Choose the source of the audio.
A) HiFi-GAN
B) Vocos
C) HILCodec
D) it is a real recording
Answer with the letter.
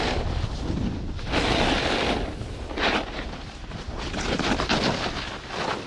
D